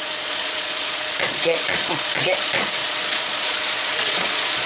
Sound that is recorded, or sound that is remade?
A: remade